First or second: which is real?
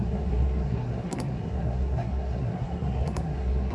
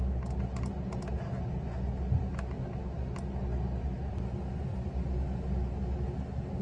second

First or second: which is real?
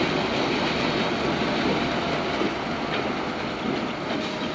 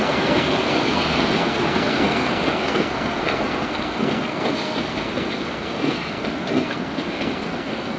first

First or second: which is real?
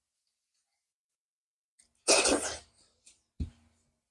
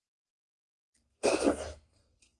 first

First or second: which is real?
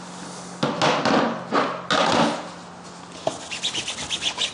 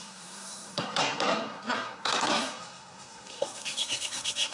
first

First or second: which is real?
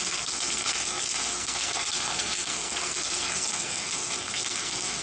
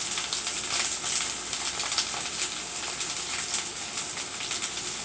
second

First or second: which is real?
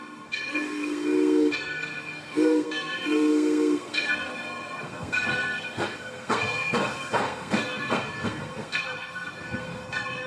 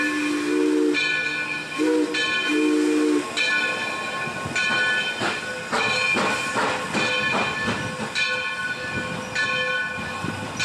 second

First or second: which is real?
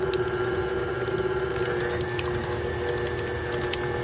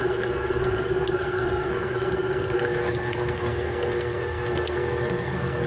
first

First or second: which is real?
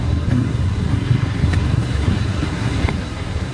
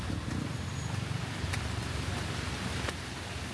second